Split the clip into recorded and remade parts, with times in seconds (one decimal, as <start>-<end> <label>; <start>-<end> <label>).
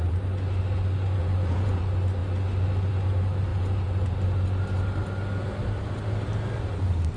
0.0-1.2 recorded; 1.2-1.8 remade; 1.8-3.5 recorded; 3.5-4.1 remade; 4.1-7.2 recorded